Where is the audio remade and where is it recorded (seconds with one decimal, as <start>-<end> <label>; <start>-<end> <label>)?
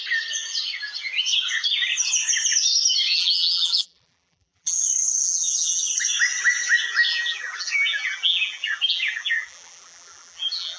0.0-3.1 recorded; 3.1-4.8 remade; 4.8-5.2 recorded; 5.2-5.8 remade; 5.8-7.1 recorded; 7.1-10.8 remade